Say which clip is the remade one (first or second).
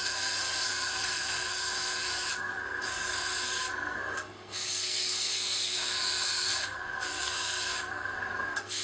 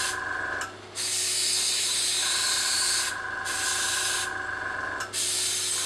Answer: first